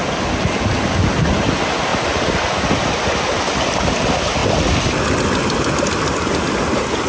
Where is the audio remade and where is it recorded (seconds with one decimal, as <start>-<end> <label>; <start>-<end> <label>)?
0.0-7.1 recorded